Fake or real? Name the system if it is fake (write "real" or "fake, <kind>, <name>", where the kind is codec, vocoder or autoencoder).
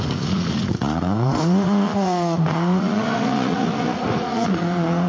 fake, vocoder, Vocos